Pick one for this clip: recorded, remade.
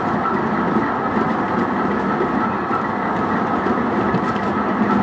recorded